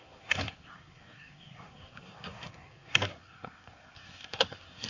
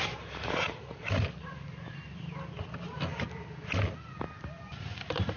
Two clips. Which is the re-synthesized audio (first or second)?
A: first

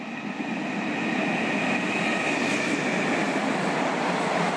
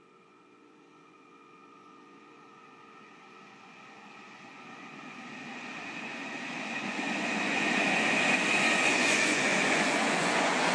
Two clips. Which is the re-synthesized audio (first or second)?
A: second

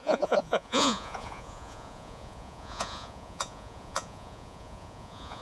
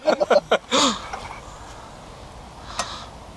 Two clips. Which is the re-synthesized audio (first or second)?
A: first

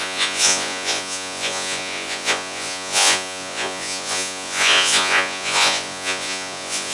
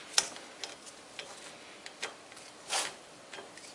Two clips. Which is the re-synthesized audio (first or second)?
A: first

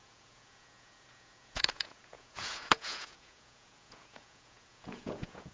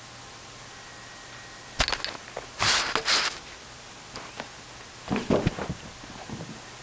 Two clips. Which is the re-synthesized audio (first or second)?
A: first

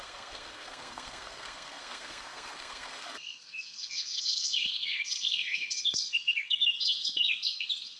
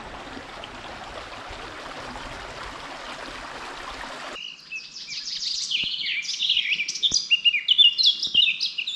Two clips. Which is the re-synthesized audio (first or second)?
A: first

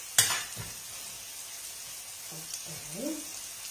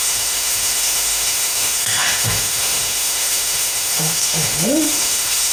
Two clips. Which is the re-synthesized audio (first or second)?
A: second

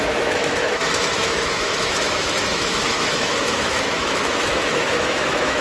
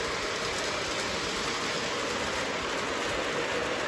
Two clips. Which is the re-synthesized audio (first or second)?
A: first